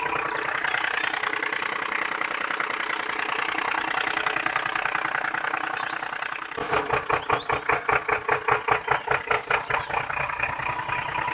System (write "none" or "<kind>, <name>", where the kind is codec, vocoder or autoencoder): none